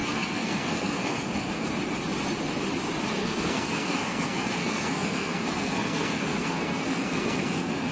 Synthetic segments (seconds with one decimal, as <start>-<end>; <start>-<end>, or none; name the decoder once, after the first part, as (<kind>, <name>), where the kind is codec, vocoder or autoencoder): 0.0-1.7 (codec, SNAC); 3.2-7.9